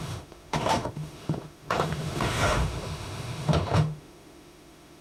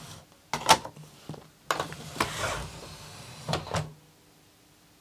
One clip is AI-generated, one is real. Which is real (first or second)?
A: second